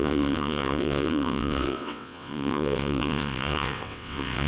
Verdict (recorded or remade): remade